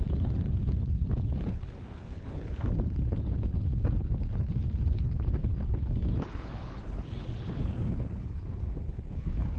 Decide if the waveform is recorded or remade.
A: remade